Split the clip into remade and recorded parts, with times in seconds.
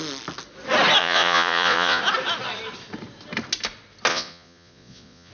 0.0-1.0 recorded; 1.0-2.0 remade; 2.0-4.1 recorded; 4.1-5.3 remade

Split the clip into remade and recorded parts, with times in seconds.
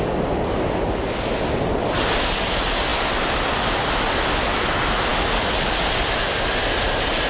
0.0-7.3 recorded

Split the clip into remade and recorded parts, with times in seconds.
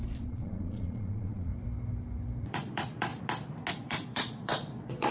0.0-1.5 remade; 1.5-2.4 recorded; 2.4-3.1 remade; 3.1-3.7 recorded; 3.7-5.1 remade